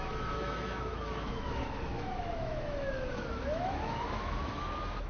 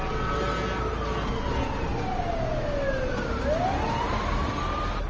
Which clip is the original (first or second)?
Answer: second